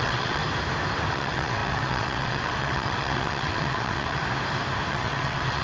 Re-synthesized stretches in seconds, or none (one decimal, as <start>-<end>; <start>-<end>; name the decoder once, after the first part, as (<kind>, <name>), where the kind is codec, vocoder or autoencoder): 0.0-0.4 (vocoder, WaveNeXt); 1.1-4.2; 4.9-5.6